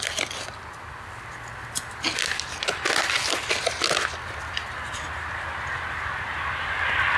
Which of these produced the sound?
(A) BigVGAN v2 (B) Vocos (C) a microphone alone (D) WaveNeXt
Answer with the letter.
C